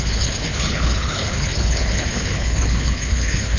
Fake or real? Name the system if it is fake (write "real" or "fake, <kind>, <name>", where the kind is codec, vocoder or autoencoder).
fake, codec, HILCodec